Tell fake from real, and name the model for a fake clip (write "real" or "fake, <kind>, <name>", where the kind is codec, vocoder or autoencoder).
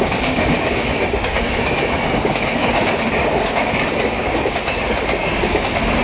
fake, codec, DAC